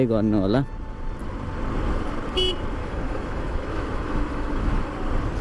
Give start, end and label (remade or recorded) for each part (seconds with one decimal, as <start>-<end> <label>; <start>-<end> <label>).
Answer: 0.0-2.8 recorded; 2.8-4.9 remade; 4.9-5.4 recorded